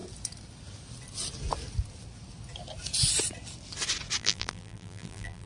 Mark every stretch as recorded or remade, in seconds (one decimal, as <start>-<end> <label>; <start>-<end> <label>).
0.0-4.2 recorded; 4.2-5.5 remade